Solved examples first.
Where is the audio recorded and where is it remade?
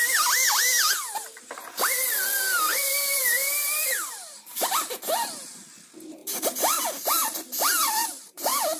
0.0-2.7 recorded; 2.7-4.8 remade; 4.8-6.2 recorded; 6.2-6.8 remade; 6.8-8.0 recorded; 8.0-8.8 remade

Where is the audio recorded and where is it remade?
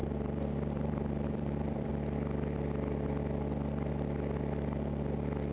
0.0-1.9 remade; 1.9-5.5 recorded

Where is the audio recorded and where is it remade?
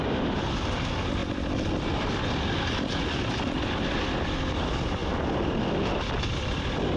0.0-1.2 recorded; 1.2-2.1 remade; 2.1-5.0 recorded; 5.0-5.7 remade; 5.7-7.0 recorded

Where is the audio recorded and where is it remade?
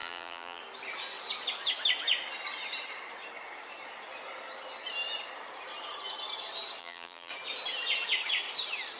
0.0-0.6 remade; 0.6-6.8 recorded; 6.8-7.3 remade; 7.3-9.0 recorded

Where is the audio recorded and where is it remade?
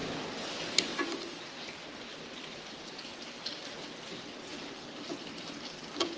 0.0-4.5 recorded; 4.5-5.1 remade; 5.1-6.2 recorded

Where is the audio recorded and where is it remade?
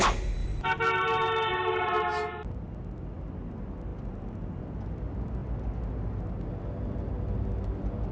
0.0-0.4 recorded; 0.4-1.9 remade; 1.9-3.9 recorded; 3.9-4.6 remade; 4.6-8.1 recorded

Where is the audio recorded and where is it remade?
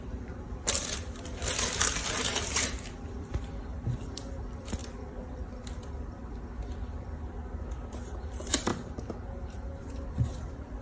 0.0-8.7 remade; 8.7-9.8 recorded; 9.8-10.8 remade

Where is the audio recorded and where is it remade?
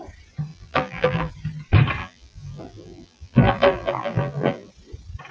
0.0-0.5 recorded; 0.5-1.3 remade; 1.3-2.0 recorded; 2.0-4.7 remade; 4.7-5.3 recorded